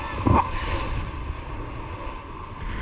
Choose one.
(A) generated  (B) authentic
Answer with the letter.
B